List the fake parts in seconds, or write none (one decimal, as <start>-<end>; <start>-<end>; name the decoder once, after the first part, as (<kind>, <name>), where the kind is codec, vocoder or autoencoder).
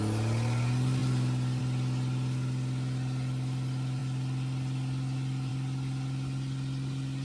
none